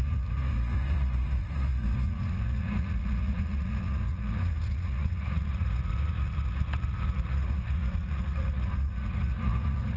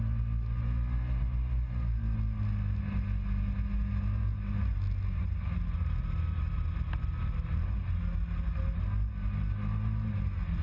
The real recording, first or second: second